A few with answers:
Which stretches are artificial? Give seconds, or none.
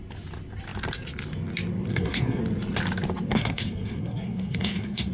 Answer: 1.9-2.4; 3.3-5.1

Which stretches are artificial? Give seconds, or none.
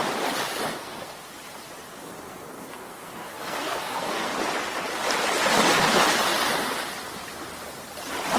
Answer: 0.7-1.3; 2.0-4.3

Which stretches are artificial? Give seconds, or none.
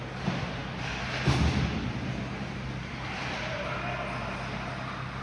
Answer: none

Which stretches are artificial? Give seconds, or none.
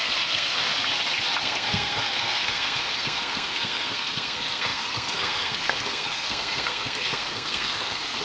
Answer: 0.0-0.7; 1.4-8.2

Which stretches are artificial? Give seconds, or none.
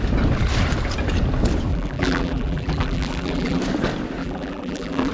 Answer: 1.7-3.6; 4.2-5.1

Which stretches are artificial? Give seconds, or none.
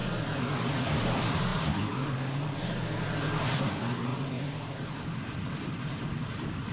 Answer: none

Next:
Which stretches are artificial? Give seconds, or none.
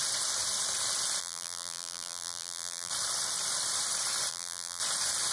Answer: 1.2-2.9; 4.3-4.8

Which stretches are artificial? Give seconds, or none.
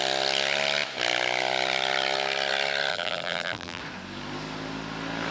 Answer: 2.9-3.8